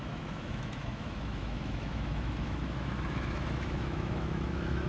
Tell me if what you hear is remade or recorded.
remade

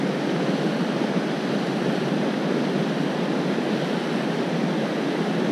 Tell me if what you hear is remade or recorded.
recorded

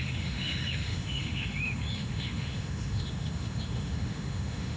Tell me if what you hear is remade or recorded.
remade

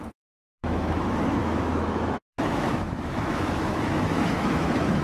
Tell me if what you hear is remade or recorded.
remade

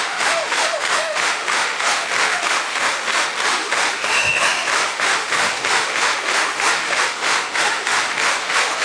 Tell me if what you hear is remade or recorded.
remade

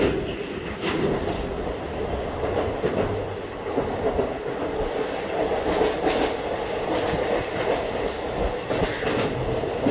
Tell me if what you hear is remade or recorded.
recorded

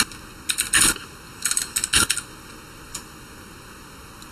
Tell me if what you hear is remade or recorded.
recorded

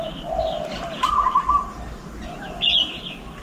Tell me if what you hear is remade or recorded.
recorded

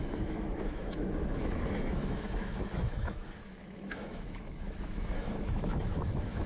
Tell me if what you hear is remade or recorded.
remade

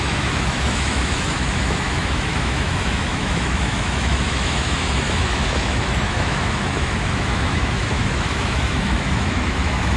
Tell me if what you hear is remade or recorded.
remade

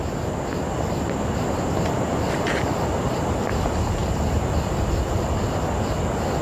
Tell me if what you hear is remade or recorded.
recorded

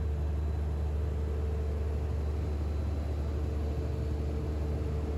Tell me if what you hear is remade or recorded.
recorded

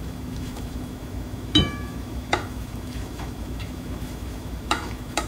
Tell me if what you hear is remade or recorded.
remade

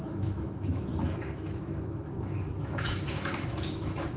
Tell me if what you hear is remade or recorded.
remade